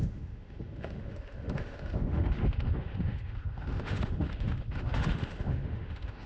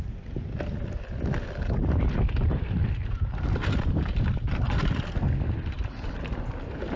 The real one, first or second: second